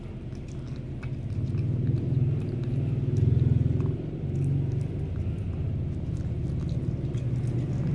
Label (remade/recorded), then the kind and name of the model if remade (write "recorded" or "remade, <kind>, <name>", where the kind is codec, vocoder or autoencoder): recorded